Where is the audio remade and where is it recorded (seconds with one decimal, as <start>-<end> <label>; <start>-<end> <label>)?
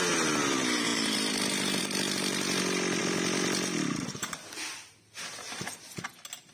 0.0-6.5 recorded